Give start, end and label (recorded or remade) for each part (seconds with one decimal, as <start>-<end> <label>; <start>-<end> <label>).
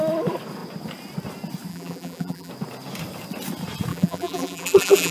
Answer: 0.0-1.7 recorded; 1.7-2.5 remade; 2.5-3.9 recorded; 3.9-5.1 remade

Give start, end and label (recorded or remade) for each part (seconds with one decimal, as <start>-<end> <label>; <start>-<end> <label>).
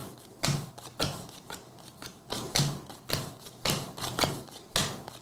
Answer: 0.0-5.2 recorded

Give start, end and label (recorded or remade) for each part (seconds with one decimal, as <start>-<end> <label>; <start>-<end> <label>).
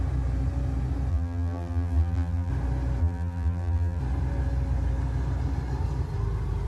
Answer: 0.0-1.1 recorded; 1.1-2.5 remade; 2.5-3.0 recorded; 3.0-4.0 remade; 4.0-6.7 recorded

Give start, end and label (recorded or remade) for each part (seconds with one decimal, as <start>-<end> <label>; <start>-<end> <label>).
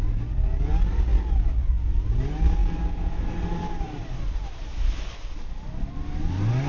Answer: 0.0-6.7 recorded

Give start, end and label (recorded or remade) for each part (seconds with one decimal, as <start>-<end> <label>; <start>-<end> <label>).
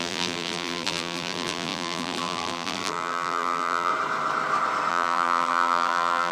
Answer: 0.0-3.9 remade; 3.9-4.9 recorded; 4.9-6.3 remade